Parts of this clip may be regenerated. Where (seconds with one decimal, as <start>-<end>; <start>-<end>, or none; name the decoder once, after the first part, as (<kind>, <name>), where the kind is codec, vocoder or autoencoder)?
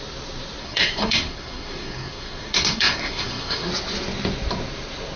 0.6-3.7 (codec, SNAC)